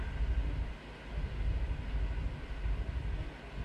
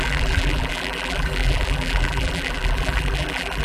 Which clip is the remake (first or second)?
second